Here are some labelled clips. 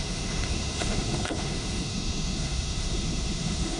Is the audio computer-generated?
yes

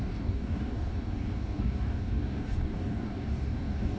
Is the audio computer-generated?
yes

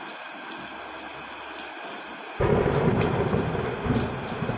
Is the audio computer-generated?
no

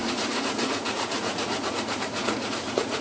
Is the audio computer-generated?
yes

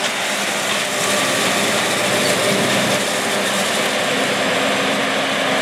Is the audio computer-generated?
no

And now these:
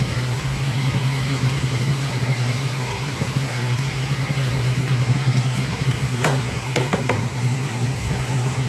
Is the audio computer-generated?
yes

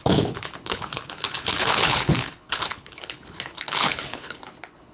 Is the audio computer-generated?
yes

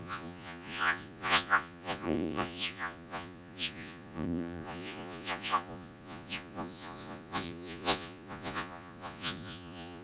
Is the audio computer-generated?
yes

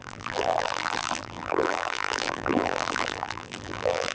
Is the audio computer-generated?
yes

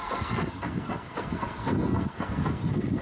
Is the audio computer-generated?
yes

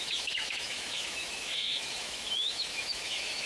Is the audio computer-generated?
yes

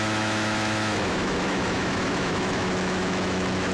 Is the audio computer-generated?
yes